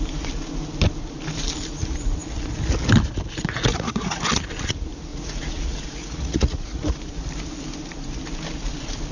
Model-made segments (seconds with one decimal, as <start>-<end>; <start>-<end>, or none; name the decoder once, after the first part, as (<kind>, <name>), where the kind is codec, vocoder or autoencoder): 3.7-4.2 (vocoder, Vocos); 5.1-7.0